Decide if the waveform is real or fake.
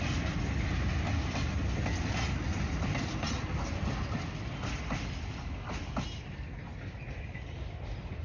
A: real